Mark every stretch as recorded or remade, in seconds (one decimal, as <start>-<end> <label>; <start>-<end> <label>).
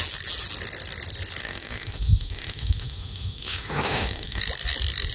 0.0-1.4 recorded; 1.4-4.4 remade; 4.4-5.1 recorded